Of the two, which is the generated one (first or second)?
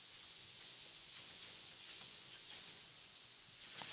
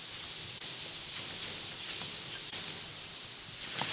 first